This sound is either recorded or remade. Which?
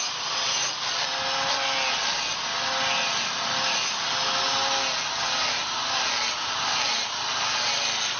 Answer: recorded